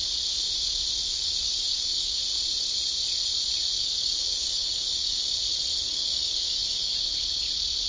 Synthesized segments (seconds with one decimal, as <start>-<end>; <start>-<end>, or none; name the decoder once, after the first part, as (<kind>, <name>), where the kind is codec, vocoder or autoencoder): 1.1-2.2 (codec, DAC); 3.8-5.2; 5.8-7.1